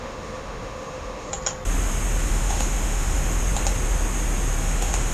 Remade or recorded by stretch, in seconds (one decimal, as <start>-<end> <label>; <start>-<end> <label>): 0.0-1.3 remade; 1.3-2.2 recorded; 2.2-3.4 remade; 3.4-4.6 recorded; 4.6-5.1 remade

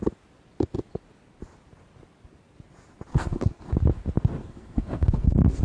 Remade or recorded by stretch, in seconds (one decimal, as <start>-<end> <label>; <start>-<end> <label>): 0.0-3.1 recorded; 3.1-3.7 remade; 3.7-4.4 recorded; 4.4-5.6 remade

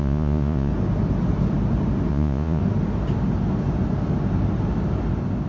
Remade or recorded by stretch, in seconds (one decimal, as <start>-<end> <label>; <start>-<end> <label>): 0.0-0.7 remade; 0.7-2.1 recorded; 2.1-2.6 remade; 2.6-5.5 recorded